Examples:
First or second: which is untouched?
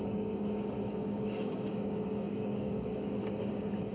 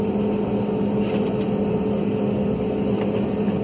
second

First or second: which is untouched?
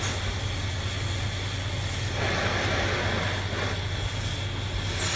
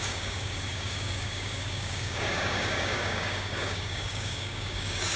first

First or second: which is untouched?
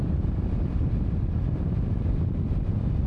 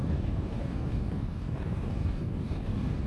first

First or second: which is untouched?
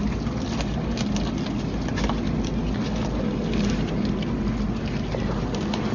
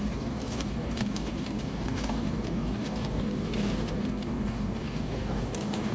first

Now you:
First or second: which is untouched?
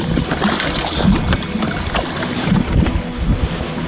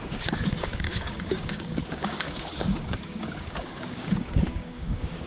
first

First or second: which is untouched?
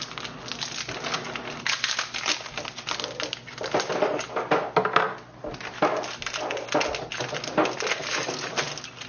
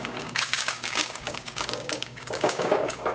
first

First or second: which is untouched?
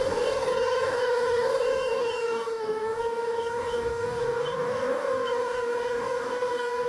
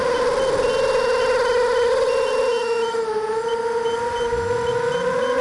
second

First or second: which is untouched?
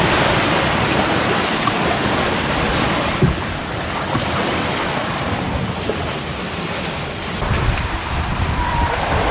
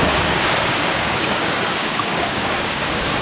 first